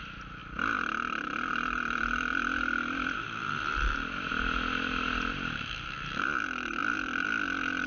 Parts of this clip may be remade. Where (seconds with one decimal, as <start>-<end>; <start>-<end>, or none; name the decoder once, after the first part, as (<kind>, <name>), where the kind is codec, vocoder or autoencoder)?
0.4-1.5 (vocoder, BigVGAN v2); 2.3-4.3; 6.8-7.9